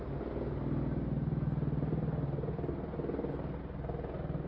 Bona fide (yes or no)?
yes